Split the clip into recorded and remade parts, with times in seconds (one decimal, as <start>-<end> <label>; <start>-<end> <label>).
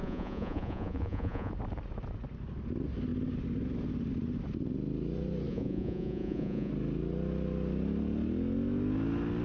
0.0-1.5 remade; 1.5-5.5 recorded; 5.5-6.7 remade; 6.7-9.4 recorded